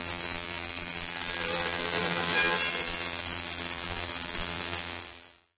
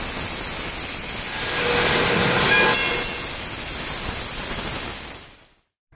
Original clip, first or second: second